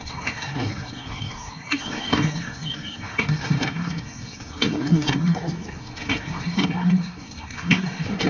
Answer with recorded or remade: remade